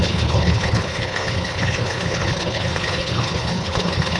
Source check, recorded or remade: remade